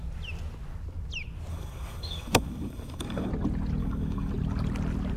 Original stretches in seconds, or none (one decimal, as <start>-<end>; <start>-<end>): 0.0-1.5; 3.3-3.8; 4.3-5.2